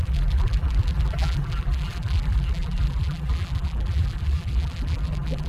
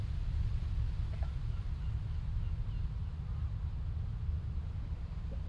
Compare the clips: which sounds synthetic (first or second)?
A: first